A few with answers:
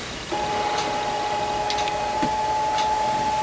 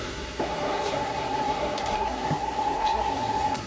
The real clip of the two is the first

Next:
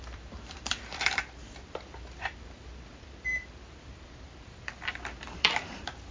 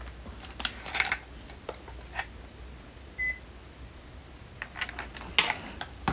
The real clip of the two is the second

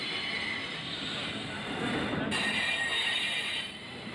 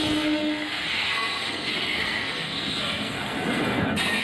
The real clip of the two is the first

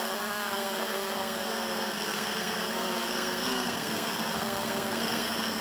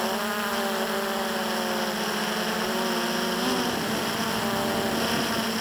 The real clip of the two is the second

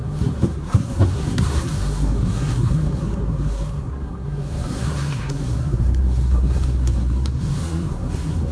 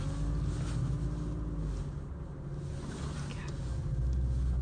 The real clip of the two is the second